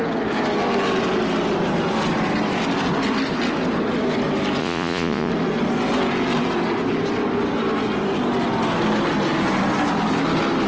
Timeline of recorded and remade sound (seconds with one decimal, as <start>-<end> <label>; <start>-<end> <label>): 0.0-4.6 recorded; 4.6-5.3 remade; 5.3-10.7 recorded